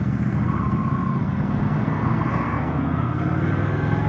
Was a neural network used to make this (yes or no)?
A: yes